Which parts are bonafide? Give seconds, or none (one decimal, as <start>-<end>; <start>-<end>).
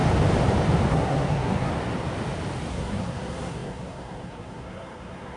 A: 0.0-0.9; 1.7-2.7